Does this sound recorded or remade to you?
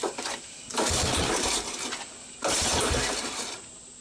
recorded